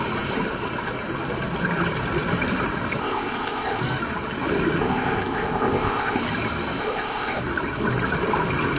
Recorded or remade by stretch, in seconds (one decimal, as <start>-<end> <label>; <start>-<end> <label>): 0.0-3.0 recorded; 3.0-3.8 remade; 3.8-4.8 recorded; 4.8-6.2 remade; 6.2-6.8 recorded; 6.8-7.4 remade; 7.4-8.8 recorded